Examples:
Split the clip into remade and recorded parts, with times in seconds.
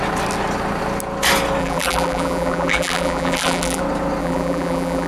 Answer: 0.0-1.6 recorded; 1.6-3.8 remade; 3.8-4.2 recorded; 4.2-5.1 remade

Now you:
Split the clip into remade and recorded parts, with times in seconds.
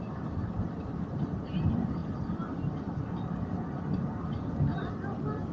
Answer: 0.0-2.0 remade; 2.0-5.5 recorded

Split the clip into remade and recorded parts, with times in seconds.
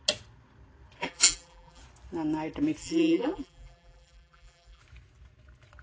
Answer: 0.0-1.0 recorded; 1.0-1.8 remade; 1.8-2.8 recorded; 2.8-4.8 remade; 4.8-5.8 recorded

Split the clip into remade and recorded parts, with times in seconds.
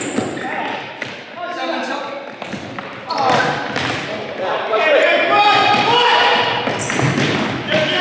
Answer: 0.0-5.6 recorded; 5.6-6.8 remade; 6.8-8.0 recorded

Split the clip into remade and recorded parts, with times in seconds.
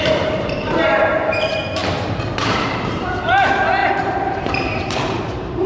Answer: 0.0-5.7 remade